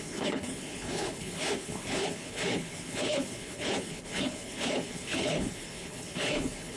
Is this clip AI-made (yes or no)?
yes